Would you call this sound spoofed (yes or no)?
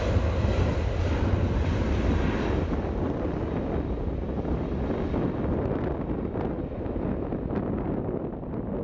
no